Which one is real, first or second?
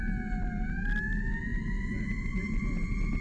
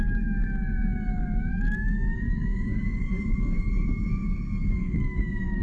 first